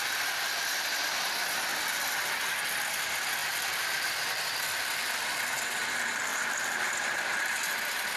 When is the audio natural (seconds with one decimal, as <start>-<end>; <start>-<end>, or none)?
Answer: 0.0-1.7; 2.6-3.4; 5.4-6.3